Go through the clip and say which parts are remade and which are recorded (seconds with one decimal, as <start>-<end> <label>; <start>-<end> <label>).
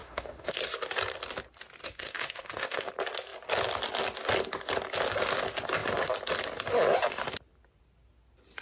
0.0-0.6 remade; 0.6-1.8 recorded; 1.8-2.9 remade; 2.9-8.6 recorded